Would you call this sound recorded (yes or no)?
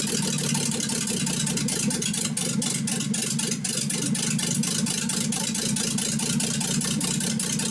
yes